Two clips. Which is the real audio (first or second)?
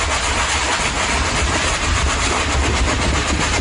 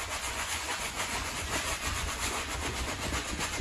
first